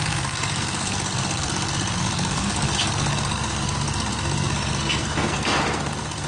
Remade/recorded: remade